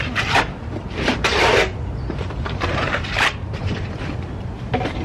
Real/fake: fake